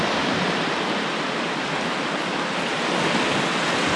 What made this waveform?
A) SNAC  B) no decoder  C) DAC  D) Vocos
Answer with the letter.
B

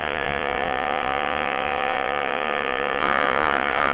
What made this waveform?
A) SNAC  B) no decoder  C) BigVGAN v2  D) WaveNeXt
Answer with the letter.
D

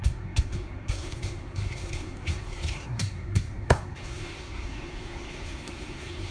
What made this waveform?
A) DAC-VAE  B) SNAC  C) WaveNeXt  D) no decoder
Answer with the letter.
B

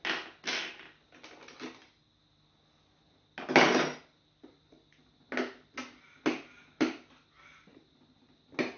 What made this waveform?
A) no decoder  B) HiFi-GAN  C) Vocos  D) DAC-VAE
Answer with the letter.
A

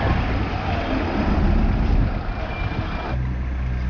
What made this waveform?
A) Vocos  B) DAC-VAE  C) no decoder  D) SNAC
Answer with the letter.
C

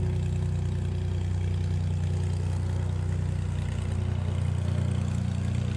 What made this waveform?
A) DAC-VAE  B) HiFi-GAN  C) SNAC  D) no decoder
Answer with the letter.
D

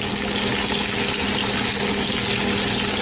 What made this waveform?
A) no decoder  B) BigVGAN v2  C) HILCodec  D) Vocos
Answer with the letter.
A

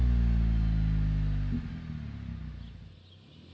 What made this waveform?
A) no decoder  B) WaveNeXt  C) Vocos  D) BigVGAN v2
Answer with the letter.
A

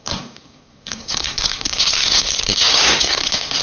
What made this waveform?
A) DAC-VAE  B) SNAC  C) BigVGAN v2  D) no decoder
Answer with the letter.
B